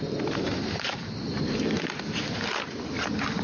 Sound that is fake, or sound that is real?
real